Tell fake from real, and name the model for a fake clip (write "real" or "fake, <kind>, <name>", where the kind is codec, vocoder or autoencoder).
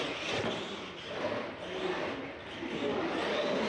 real